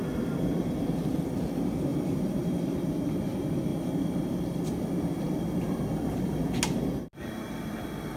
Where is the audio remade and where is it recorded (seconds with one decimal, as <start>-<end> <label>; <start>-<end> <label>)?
0.0-1.9 recorded; 1.9-2.8 remade; 2.8-3.7 recorded; 3.7-6.6 remade; 6.6-8.2 recorded